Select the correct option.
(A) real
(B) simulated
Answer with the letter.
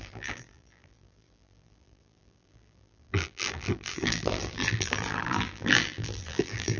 B